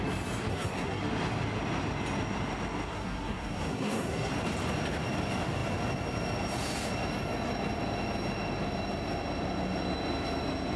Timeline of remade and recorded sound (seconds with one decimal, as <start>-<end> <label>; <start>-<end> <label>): 0.0-0.5 recorded; 0.5-1.0 remade; 1.0-2.9 recorded; 2.9-4.3 remade; 4.3-10.8 recorded